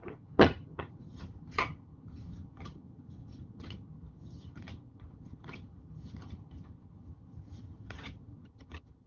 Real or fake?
fake